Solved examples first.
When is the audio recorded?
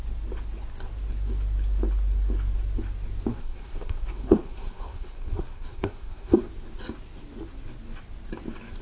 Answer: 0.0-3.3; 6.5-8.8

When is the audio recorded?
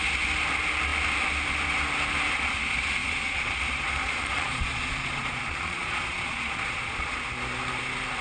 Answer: 0.0-3.0; 3.6-4.0; 7.2-8.2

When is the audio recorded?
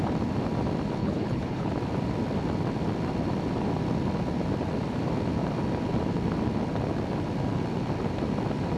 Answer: 0.0-1.0; 1.7-8.8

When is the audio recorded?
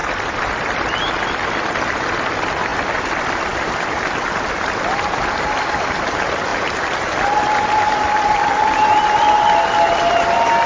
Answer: 0.0-10.7